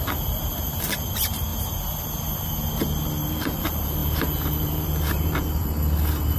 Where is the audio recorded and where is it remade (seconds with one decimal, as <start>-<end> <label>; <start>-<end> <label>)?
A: 0.0-1.5 remade; 1.5-3.3 recorded; 3.3-6.4 remade